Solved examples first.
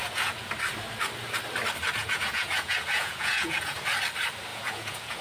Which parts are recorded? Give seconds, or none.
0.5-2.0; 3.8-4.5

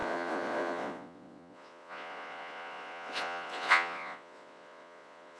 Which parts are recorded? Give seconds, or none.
none

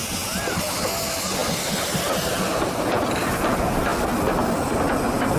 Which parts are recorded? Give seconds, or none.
0.0-5.4

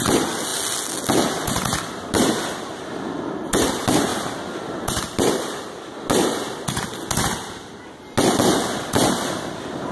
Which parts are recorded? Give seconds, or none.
0.0-9.9

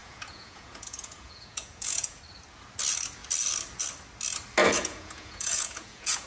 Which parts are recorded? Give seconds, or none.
2.2-4.6

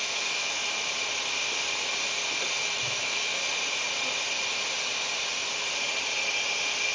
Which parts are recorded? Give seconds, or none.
0.6-2.8; 3.3-6.9

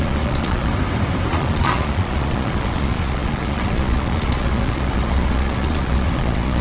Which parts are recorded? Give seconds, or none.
0.7-1.3

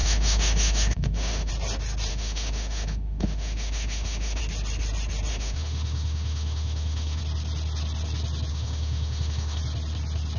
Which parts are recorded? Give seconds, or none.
1.5-2.1; 4.4-5.3; 7.2-8.5; 9.6-10.4